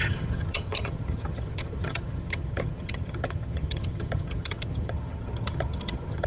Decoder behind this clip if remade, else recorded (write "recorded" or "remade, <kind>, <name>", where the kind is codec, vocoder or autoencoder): remade, vocoder, HiFi-GAN